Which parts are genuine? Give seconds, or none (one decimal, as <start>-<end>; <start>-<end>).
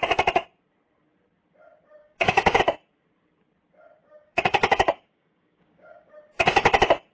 0.0-2.0; 2.6-4.0; 6.1-7.1